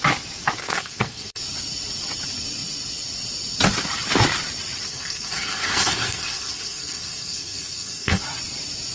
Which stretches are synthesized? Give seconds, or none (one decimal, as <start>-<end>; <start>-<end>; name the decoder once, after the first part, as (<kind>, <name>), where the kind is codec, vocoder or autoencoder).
0.6-1.4 (codec, SNAC); 4.9-8.2